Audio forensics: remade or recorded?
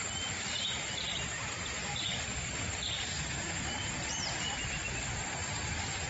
remade